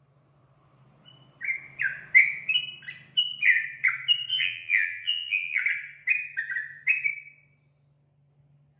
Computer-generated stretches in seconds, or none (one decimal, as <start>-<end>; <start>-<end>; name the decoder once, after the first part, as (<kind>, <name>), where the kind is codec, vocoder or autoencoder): 4.3-5.6 (vocoder, BigVGAN v2)